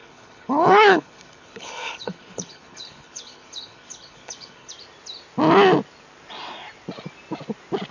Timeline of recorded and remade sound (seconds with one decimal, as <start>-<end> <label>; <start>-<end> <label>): 0.0-4.7 remade; 4.7-7.9 recorded